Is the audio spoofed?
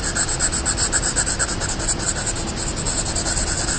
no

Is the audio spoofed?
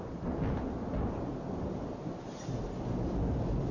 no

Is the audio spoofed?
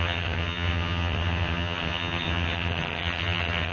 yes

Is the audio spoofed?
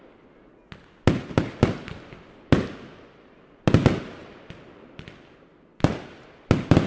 no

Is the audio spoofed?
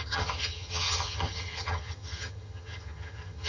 yes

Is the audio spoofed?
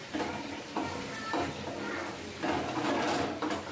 no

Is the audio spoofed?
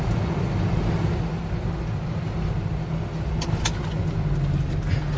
no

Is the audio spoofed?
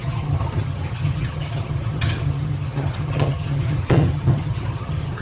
yes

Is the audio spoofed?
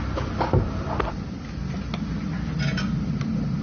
no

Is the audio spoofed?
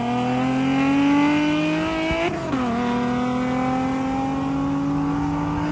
no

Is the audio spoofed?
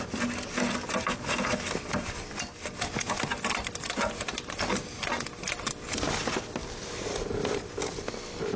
no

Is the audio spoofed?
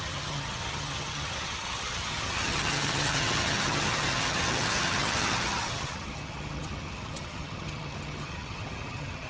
yes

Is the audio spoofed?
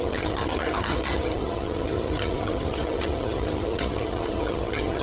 yes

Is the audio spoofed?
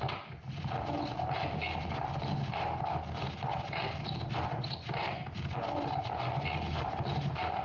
no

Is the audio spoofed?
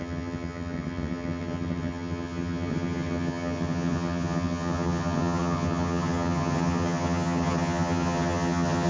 yes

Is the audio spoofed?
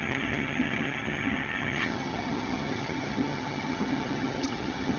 yes